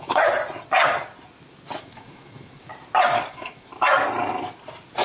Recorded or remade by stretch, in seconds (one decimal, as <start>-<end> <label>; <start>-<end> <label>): 0.0-0.4 remade; 0.4-1.8 recorded; 1.8-2.7 remade; 2.7-3.3 recorded; 3.3-3.7 remade; 3.7-5.0 recorded

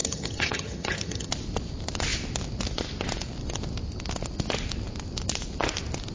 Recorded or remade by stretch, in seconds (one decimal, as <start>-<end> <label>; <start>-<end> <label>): 0.0-1.3 remade; 1.3-6.1 recorded

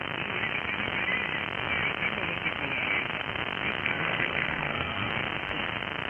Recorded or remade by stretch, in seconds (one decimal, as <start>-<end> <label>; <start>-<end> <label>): 0.0-3.8 recorded; 3.8-5.1 remade; 5.1-6.1 recorded

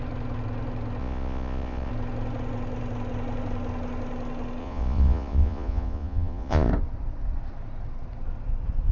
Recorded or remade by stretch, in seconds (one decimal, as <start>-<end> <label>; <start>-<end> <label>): 0.0-1.0 recorded; 1.0-1.9 remade; 1.9-4.6 recorded; 4.6-6.7 remade; 6.7-8.9 recorded